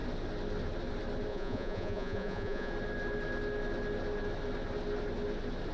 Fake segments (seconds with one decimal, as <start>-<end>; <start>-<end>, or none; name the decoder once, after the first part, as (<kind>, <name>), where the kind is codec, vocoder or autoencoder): 1.3-2.7 (vocoder, Vocos)